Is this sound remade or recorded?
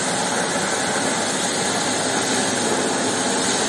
recorded